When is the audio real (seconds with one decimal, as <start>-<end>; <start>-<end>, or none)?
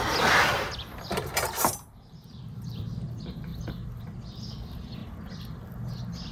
0.0-0.5; 3.0-6.3